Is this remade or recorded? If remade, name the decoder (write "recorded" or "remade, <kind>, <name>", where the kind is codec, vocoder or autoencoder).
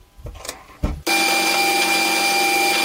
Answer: recorded